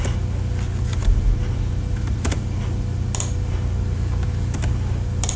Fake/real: real